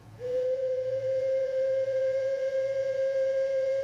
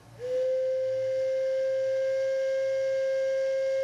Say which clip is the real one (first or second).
second